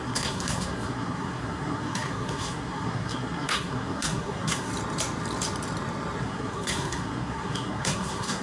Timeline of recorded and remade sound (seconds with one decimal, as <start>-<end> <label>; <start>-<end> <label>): 0.0-4.7 remade; 4.7-6.2 recorded; 6.2-8.4 remade